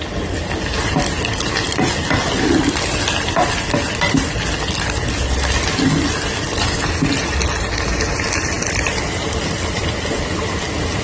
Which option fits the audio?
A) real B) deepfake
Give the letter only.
A